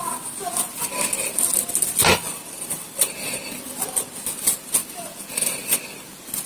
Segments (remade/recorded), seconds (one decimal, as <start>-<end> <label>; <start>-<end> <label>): 0.0-2.1 recorded; 2.1-3.6 remade; 3.6-4.8 recorded; 4.8-6.1 remade; 6.1-6.5 recorded